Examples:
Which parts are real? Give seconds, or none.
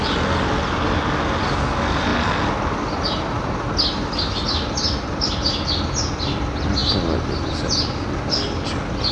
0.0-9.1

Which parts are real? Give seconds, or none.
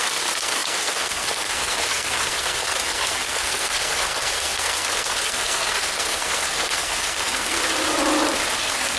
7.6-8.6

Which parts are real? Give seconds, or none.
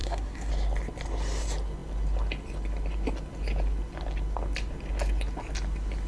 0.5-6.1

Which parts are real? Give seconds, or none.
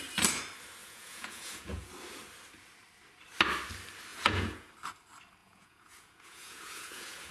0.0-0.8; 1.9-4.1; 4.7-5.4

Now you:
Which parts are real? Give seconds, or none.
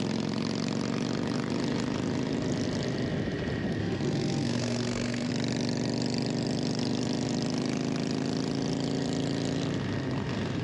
0.0-3.8; 5.3-10.6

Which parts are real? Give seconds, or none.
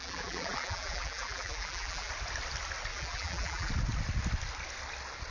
2.1-2.9; 3.7-5.3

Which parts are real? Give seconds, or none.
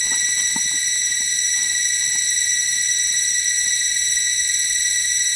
0.0-5.4